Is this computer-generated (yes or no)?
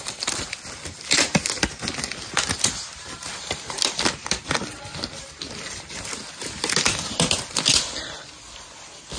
no